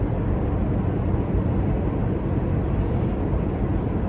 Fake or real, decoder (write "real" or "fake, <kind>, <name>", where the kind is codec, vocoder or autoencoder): fake, vocoder, BigVGAN v2